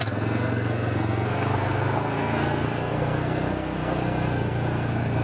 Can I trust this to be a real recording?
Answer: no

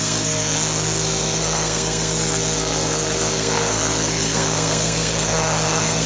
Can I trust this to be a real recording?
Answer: no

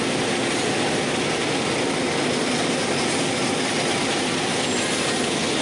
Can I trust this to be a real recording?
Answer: yes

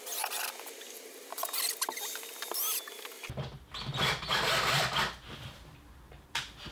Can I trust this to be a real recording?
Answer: yes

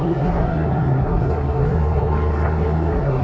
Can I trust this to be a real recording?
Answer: no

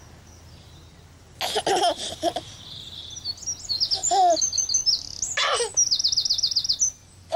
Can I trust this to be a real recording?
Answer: yes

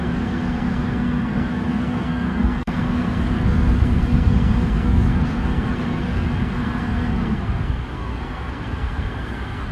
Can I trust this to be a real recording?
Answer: no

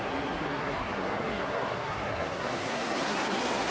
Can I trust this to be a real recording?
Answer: no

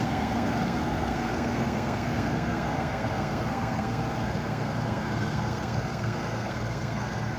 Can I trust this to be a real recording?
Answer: no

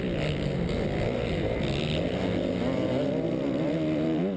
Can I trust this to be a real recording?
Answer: yes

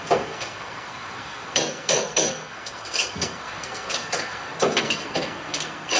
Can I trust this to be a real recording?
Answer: no